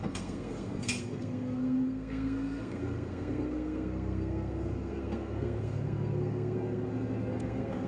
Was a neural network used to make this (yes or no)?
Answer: yes